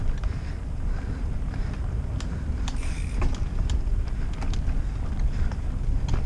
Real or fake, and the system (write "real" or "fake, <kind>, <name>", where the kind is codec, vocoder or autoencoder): fake, vocoder, BigVGAN v2